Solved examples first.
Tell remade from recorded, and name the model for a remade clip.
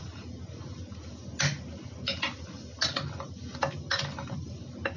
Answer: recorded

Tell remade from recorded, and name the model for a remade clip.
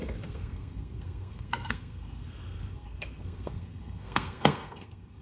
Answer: remade, codec, SNAC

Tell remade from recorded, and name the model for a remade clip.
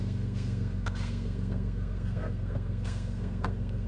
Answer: remade, codec, SNAC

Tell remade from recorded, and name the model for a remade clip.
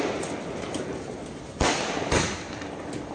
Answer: recorded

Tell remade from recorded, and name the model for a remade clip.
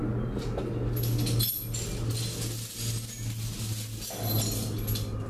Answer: recorded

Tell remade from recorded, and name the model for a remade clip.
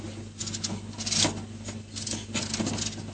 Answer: recorded